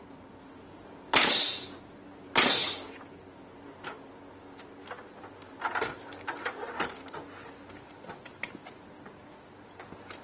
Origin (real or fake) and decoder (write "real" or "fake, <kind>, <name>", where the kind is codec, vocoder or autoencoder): real